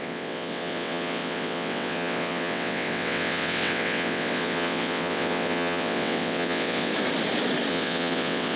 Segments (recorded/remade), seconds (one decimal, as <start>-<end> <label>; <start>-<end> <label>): 0.0-6.9 remade; 6.9-7.7 recorded; 7.7-8.6 remade